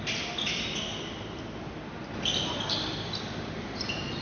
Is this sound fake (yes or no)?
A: no